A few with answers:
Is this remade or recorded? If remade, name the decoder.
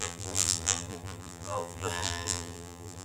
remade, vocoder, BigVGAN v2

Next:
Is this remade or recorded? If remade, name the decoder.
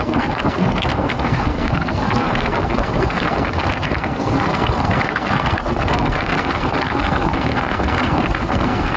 remade, codec, SNAC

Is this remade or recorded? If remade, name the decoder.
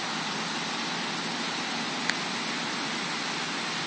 recorded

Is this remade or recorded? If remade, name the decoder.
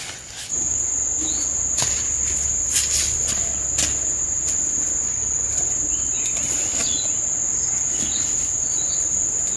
recorded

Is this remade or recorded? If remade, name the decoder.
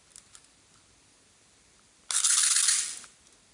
recorded